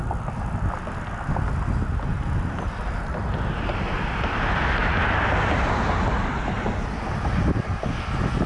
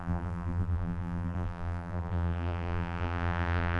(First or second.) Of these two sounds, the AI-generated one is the second